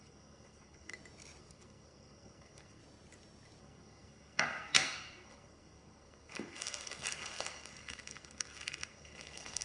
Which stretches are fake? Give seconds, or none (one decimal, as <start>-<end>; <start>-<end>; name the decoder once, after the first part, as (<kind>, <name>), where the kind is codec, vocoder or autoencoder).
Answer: 0.0-0.9 (codec, SNAC); 1.4-2.8; 3.6-9.6